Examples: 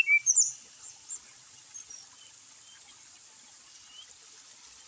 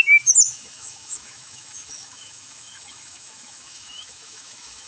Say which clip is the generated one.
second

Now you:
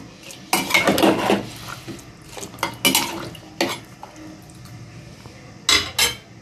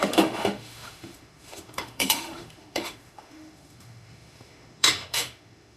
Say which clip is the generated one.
second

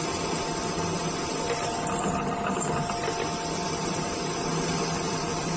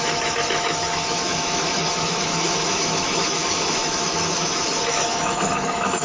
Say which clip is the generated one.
second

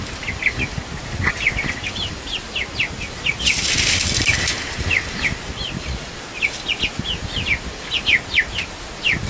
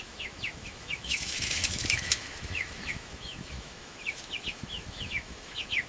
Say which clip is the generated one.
second